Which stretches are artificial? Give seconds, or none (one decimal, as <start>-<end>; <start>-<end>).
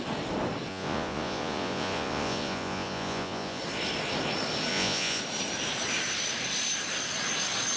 0.7-3.6; 4.7-5.2